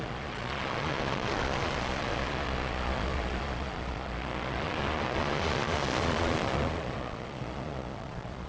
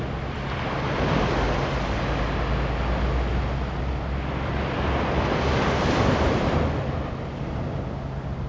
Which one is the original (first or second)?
second